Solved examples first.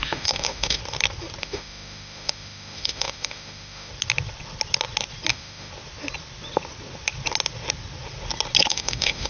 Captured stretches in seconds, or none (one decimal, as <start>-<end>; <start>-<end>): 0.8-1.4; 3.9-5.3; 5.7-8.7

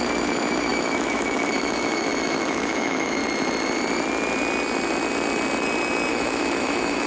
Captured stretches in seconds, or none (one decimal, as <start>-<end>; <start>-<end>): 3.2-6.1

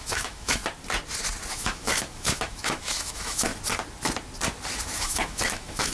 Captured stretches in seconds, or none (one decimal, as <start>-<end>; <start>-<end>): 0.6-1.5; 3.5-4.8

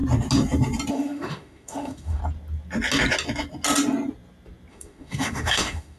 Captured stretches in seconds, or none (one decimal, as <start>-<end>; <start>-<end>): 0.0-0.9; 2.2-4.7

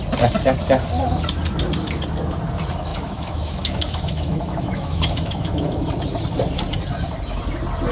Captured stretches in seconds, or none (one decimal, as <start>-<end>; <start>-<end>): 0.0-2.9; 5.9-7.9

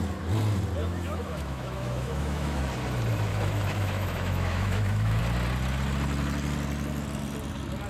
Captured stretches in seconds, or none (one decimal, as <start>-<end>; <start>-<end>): 0.0-0.8; 2.6-3.3; 5.2-7.9

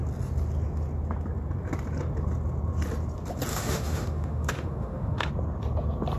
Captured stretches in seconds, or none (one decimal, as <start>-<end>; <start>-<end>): 0.0-3.5; 5.3-6.2

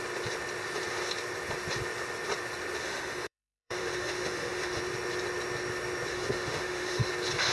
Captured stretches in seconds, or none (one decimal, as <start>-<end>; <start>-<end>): 0.0-2.8; 4.8-6.1; 7.1-7.5